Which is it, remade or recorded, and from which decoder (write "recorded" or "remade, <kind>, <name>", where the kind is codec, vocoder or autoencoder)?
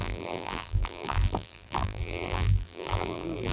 remade, vocoder, BigVGAN v2